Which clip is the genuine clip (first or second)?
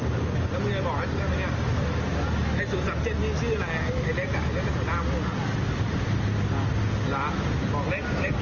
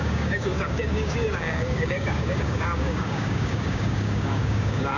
first